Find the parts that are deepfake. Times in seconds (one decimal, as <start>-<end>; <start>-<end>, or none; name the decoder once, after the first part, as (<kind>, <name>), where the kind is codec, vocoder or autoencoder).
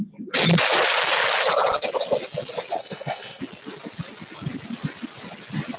2.8-3.4 (codec, SNAC)